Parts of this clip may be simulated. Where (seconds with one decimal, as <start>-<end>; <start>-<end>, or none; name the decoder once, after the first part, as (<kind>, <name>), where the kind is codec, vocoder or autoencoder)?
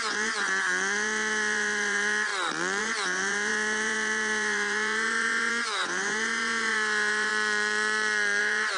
0.0-2.3 (vocoder, Vocos); 2.8-7.3; 8.4-8.8